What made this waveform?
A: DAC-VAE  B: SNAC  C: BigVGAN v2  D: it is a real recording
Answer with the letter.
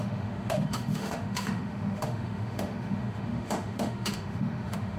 A